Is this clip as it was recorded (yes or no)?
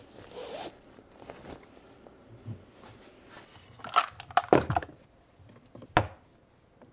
yes